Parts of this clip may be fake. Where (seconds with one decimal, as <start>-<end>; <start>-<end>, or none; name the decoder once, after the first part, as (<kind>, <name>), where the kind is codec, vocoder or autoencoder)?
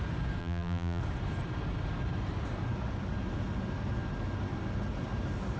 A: 0.4-1.0 (vocoder, BigVGAN v2)